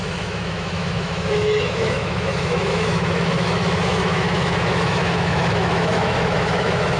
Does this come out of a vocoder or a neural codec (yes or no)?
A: yes